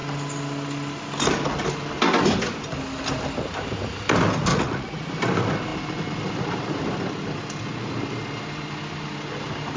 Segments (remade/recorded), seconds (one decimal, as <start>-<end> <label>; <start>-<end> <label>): 0.0-4.5 recorded; 4.5-5.1 remade; 5.1-9.8 recorded